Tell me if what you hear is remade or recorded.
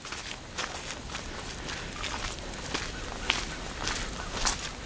recorded